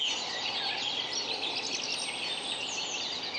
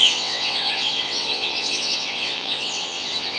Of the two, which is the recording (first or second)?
first